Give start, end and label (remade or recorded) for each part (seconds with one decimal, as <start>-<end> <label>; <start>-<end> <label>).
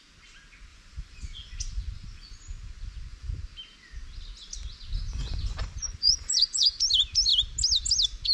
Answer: 0.0-0.7 recorded; 0.7-3.3 remade; 3.3-5.1 recorded; 5.1-6.8 remade; 6.8-8.3 recorded